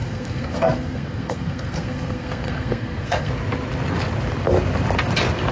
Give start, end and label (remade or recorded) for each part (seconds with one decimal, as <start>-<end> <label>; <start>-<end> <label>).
0.0-3.3 remade; 3.3-5.5 recorded